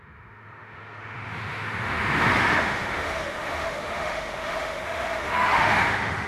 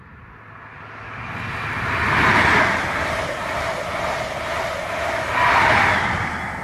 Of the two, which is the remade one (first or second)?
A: first